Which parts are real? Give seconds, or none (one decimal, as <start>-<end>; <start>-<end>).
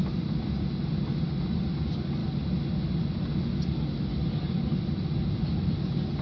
0.0-6.2